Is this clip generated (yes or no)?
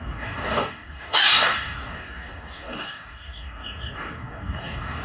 yes